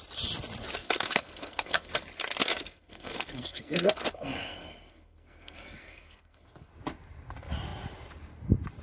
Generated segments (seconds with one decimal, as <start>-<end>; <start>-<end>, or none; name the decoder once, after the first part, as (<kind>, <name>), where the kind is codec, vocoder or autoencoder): 0.8-1.9 (codec, SNAC); 2.4-6.7